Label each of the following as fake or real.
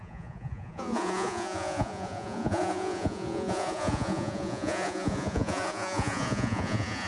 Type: fake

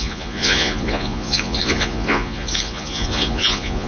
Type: fake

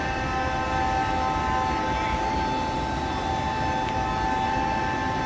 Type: real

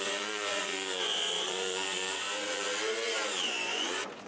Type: fake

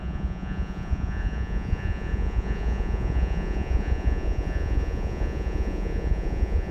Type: fake